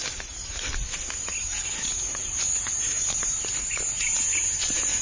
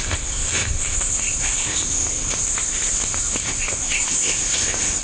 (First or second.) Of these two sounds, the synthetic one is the second